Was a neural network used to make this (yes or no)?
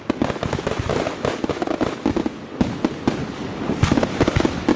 no